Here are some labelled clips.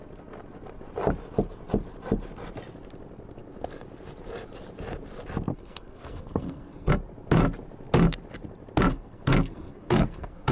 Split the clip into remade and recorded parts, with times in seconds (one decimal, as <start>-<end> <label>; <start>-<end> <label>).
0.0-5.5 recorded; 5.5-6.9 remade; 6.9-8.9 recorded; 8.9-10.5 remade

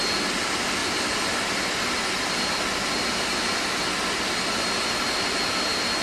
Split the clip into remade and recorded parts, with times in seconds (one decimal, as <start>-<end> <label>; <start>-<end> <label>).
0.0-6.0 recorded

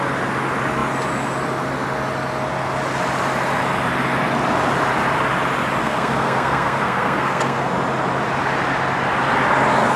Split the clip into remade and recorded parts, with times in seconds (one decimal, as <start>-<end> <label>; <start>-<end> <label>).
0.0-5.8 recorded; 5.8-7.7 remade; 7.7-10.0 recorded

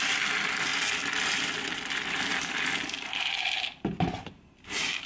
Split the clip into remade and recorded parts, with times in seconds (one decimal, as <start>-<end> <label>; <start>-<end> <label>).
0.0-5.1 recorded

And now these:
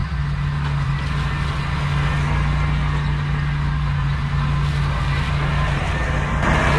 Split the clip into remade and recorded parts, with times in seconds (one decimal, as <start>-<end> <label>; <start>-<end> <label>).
0.0-6.8 recorded

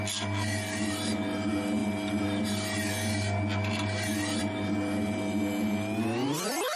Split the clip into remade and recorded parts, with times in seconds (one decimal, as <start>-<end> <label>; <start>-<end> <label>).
0.0-6.8 recorded

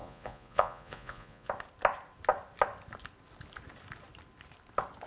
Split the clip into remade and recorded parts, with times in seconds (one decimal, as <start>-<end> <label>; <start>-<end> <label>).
0.0-1.5 remade; 1.5-5.1 recorded